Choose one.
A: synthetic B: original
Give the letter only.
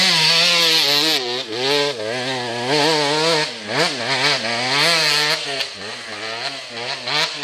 B